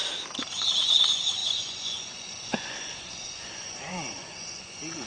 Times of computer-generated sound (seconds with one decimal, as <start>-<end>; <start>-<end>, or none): 0.5-5.1

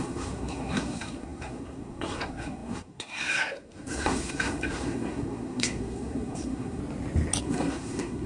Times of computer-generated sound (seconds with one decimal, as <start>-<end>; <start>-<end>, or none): 0.0-6.8; 7.4-8.3

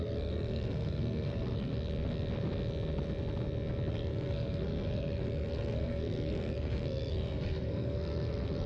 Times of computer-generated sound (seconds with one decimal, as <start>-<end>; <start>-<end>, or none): 0.0-1.7; 3.9-8.7

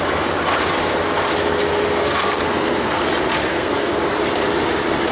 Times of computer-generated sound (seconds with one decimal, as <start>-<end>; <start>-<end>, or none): 2.0-3.0; 3.5-4.0